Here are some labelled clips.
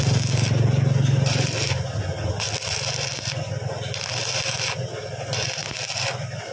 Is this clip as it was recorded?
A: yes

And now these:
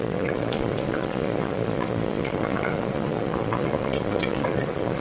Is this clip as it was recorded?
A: no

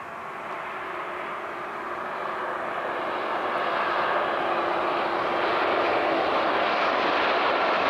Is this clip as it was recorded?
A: yes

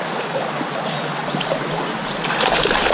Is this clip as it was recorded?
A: no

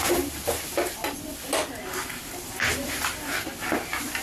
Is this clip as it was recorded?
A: yes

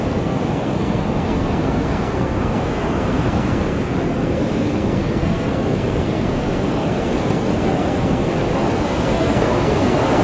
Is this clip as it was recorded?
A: no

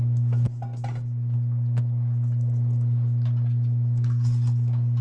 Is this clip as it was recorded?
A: yes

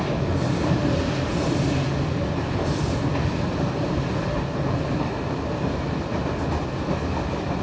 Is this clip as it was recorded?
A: yes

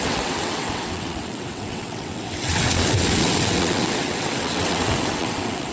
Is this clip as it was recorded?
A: no